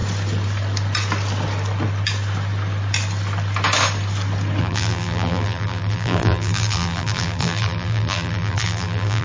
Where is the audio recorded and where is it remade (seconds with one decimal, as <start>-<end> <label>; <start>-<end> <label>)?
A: 0.0-4.6 recorded; 4.6-9.2 remade